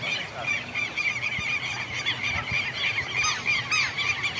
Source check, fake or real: real